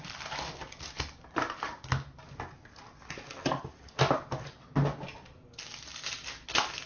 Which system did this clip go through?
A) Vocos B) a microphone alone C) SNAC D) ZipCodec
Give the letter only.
B